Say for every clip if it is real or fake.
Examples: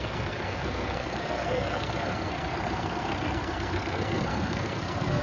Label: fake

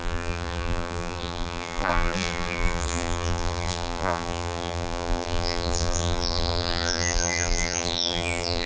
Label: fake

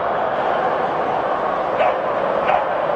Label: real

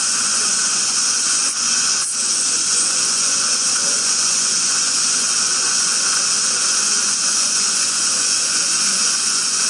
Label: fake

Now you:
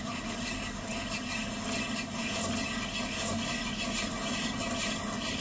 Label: real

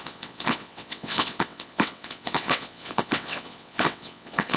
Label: fake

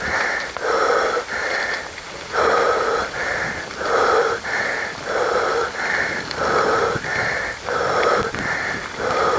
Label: real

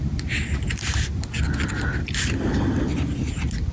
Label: real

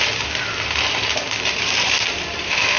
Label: real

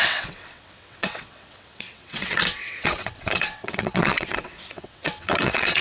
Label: fake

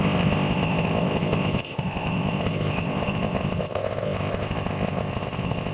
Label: fake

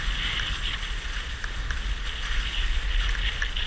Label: real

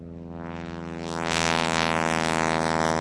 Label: real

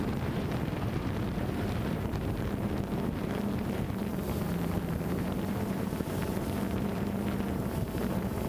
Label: fake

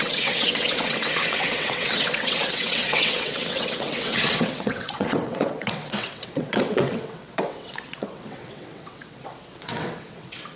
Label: fake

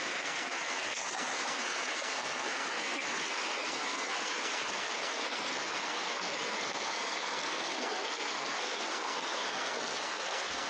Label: fake